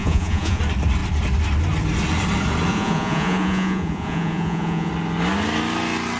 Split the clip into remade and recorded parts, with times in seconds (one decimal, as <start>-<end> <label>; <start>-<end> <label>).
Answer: 0.0-0.6 remade; 0.6-2.7 recorded; 2.7-4.9 remade; 4.9-6.2 recorded